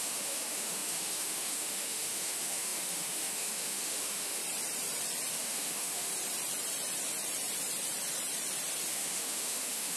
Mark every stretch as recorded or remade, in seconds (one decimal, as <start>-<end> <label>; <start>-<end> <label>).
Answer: 0.0-4.4 remade; 4.4-5.3 recorded; 5.3-6.1 remade; 6.1-8.9 recorded; 8.9-10.0 remade